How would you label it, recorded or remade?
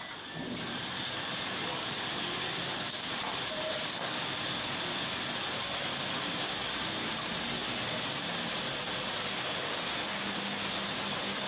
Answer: recorded